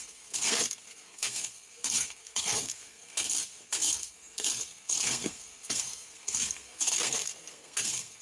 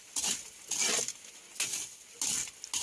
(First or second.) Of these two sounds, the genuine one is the second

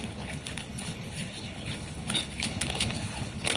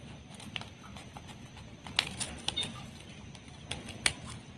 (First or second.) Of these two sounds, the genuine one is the second